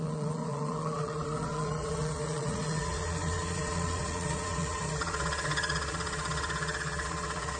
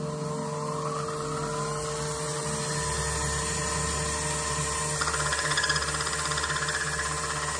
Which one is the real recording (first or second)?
second